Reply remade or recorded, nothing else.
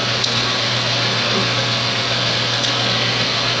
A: remade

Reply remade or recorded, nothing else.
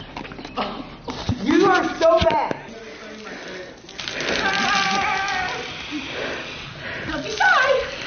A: recorded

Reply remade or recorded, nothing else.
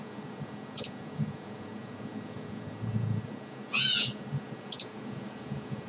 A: remade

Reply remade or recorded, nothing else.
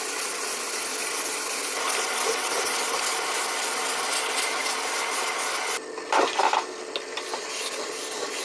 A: recorded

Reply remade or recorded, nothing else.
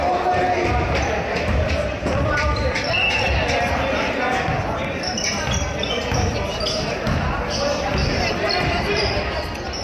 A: remade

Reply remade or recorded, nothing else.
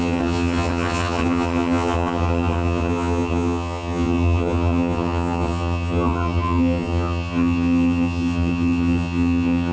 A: remade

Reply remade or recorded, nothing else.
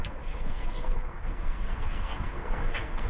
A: remade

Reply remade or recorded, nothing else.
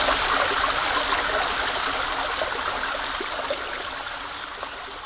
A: recorded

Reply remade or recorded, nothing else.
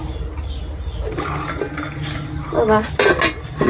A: recorded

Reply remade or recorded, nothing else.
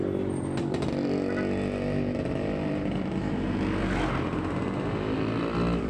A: recorded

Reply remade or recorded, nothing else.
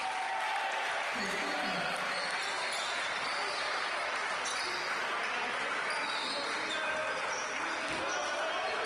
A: recorded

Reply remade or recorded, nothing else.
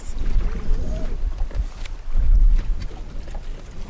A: recorded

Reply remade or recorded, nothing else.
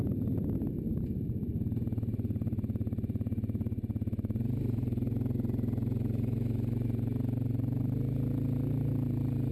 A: recorded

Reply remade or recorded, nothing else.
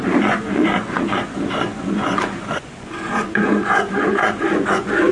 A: remade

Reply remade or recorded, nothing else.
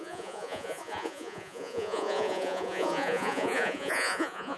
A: remade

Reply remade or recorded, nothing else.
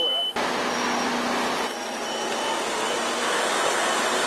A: recorded